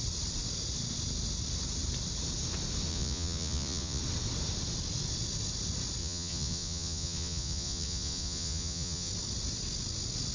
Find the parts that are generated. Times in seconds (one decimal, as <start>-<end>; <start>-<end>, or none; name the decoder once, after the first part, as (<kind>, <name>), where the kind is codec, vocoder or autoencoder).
2.9-4.0 (vocoder, Vocos); 6.0-9.1